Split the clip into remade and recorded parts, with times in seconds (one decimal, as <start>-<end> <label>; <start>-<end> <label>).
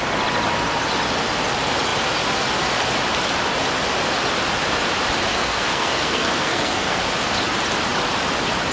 0.0-5.3 recorded; 5.3-7.0 remade; 7.0-8.7 recorded